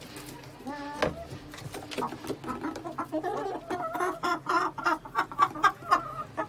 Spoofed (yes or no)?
no